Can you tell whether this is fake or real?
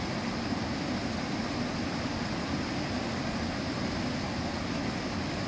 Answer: real